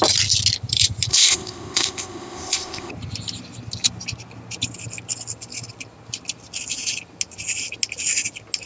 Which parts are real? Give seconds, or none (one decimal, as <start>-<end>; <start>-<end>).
0.0-1.1; 2.9-8.7